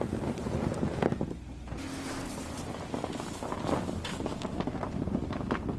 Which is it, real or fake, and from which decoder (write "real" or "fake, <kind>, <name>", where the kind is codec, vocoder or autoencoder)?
real